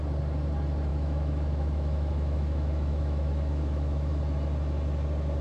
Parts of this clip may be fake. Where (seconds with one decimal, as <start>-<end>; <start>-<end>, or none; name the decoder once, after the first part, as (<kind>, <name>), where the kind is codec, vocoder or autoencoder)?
0.9-4.1 (autoencoder, DAC-VAE)